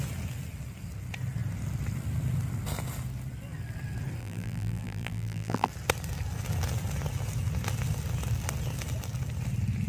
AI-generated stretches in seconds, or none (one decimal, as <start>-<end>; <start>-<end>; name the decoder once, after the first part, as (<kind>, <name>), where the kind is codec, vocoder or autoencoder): 4.2-5.7 (vocoder, BigVGAN v2)